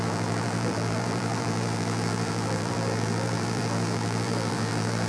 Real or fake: fake